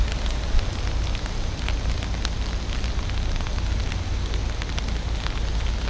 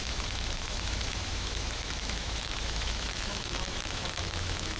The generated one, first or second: second